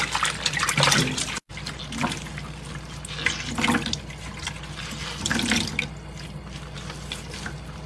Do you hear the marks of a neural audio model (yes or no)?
no